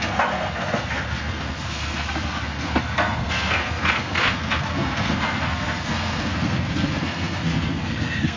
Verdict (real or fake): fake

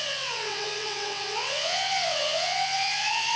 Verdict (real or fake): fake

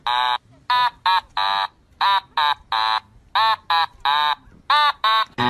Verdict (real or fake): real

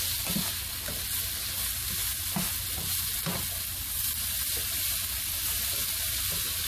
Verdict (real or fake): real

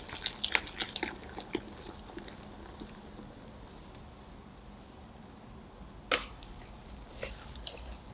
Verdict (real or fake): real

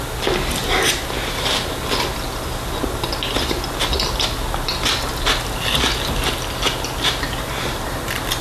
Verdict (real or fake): real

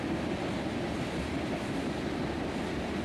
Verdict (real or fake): real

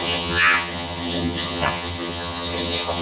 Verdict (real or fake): fake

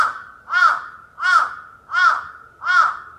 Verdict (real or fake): real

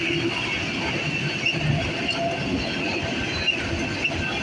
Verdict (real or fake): real